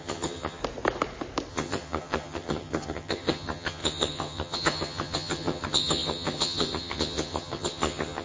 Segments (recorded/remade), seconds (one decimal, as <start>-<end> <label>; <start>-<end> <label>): 0.0-0.6 remade; 0.6-1.5 recorded; 1.5-8.2 remade